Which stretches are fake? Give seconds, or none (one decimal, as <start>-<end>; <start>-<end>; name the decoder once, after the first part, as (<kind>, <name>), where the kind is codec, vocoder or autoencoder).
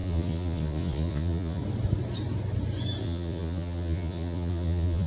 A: 0.0-1.6 (vocoder, Vocos); 3.0-5.1